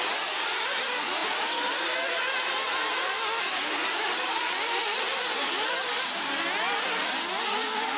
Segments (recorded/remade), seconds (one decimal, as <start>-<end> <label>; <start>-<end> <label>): 0.0-1.2 recorded; 1.2-5.2 remade; 5.2-8.0 recorded